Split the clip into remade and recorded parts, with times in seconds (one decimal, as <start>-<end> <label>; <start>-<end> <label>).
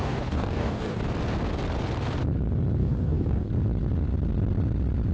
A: 0.0-1.0 remade; 1.0-2.8 recorded; 2.8-3.5 remade; 3.5-5.1 recorded